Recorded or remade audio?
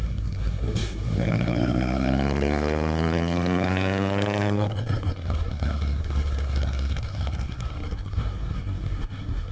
remade